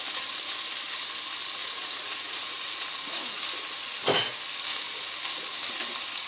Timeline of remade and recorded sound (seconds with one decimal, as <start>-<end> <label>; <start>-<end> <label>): 0.0-1.6 recorded; 1.6-3.4 remade; 3.4-6.3 recorded

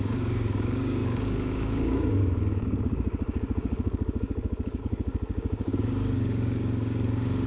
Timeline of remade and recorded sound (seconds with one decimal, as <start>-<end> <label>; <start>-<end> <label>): 0.0-7.5 remade

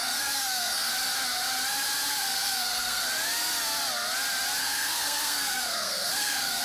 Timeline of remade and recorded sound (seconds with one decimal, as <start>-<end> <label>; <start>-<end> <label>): 0.0-0.9 remade; 0.9-2.1 recorded; 2.1-3.0 remade; 3.0-4.6 recorded; 4.6-6.6 remade

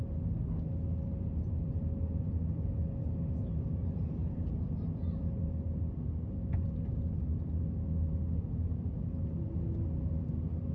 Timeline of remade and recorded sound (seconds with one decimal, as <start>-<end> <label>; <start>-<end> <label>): 0.0-4.2 recorded; 4.2-5.4 remade; 5.4-10.7 recorded

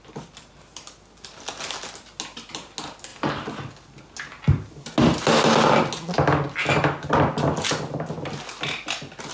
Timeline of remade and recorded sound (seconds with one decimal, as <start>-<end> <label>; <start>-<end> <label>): 0.0-9.3 recorded

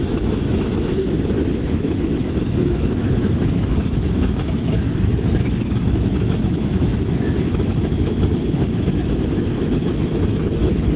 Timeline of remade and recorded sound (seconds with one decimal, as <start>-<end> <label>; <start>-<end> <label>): 0.0-11.0 remade

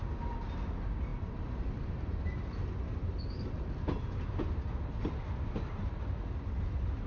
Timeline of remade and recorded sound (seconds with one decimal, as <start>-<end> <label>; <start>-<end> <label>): 0.0-7.1 recorded